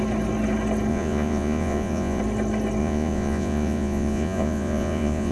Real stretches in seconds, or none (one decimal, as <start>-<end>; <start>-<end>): 0.0-0.9; 2.2-2.8